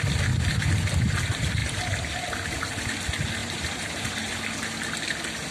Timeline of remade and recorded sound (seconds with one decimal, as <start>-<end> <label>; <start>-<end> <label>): 0.0-3.4 recorded; 3.4-4.3 remade; 4.3-5.5 recorded